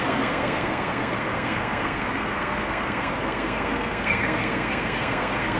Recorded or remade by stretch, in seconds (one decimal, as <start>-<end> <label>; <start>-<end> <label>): 0.0-5.6 remade

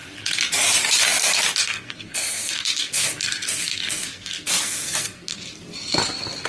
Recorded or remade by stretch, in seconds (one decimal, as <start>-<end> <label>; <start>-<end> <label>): 0.0-1.6 recorded; 1.6-5.5 remade; 5.5-6.5 recorded

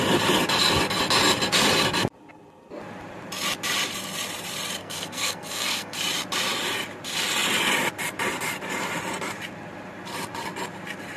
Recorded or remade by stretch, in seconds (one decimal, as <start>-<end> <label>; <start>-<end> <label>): 0.0-4.8 recorded; 4.8-6.0 remade; 6.0-11.2 recorded

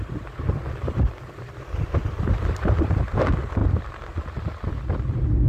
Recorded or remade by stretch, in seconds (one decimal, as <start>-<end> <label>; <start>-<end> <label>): 0.0-5.5 recorded